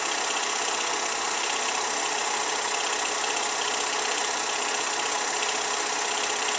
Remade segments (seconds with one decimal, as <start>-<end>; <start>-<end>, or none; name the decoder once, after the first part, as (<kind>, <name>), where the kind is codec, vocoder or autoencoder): none